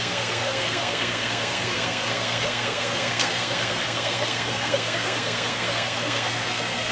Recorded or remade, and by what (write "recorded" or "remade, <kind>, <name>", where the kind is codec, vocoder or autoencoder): remade, codec, SNAC